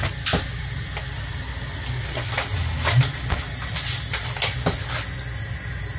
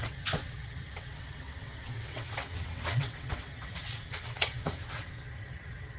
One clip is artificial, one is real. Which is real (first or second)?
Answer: first